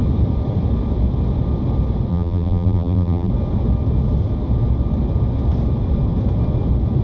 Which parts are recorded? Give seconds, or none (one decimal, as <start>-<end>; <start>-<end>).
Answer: 0.0-2.1; 3.3-7.0